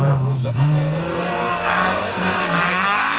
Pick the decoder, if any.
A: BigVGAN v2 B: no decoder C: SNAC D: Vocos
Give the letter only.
C